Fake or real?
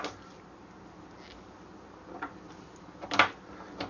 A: real